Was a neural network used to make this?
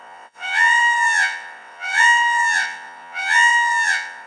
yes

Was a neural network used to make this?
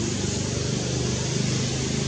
no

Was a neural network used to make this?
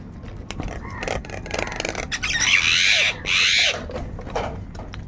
no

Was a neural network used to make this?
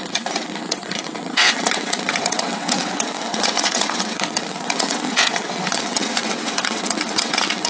yes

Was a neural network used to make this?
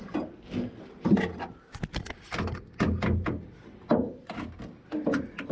no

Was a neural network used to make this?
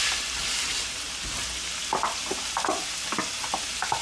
no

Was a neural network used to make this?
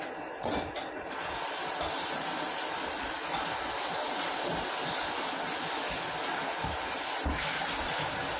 no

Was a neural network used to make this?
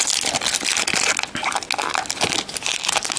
no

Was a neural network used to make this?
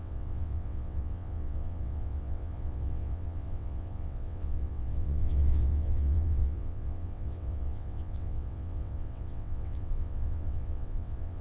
yes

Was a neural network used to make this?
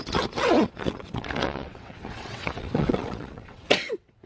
yes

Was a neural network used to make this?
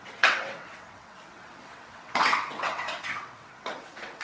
yes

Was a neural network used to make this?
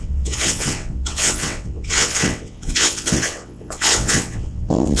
yes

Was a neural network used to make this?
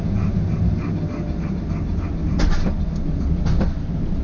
no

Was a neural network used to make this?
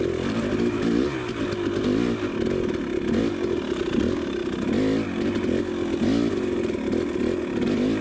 no